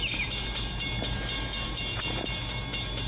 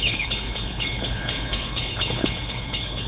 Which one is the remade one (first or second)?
second